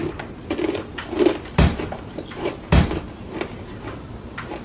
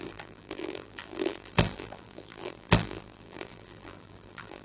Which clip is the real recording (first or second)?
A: first